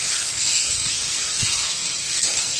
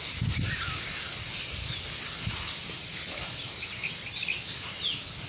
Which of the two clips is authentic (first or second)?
second